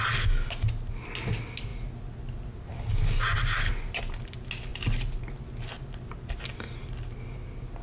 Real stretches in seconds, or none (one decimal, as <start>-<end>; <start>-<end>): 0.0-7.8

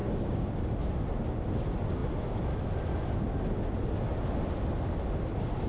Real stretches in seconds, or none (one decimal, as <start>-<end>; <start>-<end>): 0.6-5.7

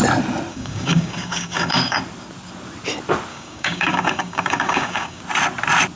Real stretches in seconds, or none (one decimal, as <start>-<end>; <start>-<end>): 0.0-0.5; 2.0-3.3; 5.2-6.0

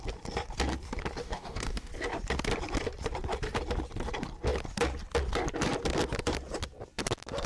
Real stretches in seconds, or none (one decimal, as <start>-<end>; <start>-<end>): 0.0-1.2; 1.9-7.5